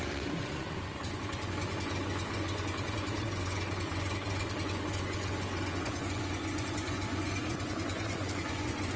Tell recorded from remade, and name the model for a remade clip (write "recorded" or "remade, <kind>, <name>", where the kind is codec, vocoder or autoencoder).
remade, vocoder, Vocos